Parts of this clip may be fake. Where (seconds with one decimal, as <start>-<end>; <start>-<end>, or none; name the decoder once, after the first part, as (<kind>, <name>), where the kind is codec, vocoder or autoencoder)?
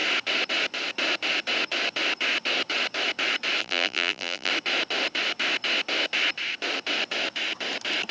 3.6-4.5 (vocoder, BigVGAN v2)